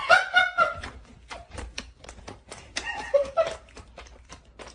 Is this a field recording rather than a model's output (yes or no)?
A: no